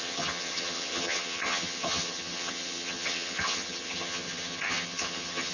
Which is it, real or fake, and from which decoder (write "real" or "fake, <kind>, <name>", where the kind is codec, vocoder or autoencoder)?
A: fake, vocoder, HiFi-GAN